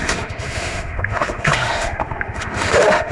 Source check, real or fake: fake